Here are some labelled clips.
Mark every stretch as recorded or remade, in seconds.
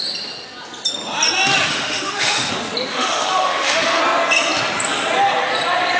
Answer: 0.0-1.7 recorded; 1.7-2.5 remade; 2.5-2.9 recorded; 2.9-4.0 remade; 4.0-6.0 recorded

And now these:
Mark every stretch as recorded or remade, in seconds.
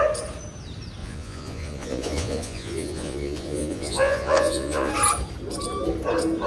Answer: 0.0-1.0 recorded; 1.0-4.9 remade; 4.9-6.5 recorded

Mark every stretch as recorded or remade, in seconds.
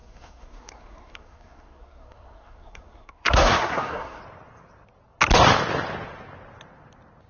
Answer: 0.0-4.2 remade; 4.2-7.3 recorded